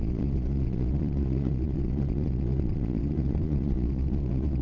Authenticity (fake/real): fake